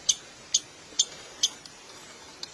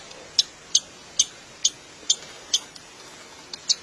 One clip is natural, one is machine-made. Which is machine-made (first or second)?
first